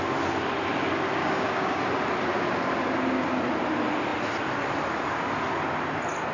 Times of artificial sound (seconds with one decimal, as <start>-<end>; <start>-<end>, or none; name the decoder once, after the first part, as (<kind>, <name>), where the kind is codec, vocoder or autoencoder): 1.2-1.8 (codec, DAC)